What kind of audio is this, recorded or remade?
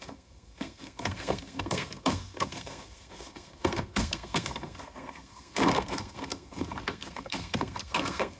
remade